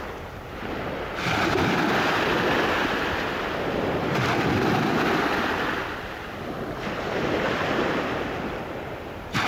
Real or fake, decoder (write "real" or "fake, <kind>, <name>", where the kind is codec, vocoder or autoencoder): real